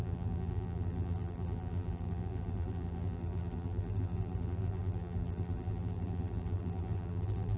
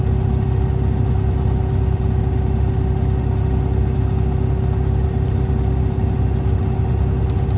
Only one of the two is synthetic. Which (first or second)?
first